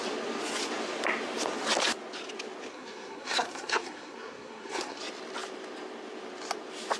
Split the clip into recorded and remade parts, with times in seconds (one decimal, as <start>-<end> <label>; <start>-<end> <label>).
0.0-2.7 recorded; 2.7-5.0 remade; 5.0-7.0 recorded